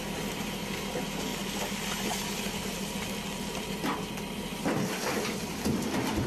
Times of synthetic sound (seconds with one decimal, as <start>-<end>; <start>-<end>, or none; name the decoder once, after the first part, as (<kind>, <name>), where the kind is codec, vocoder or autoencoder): none